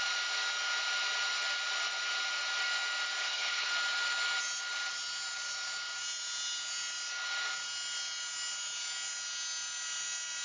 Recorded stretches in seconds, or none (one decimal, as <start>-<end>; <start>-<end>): 0.0-3.2; 3.7-10.4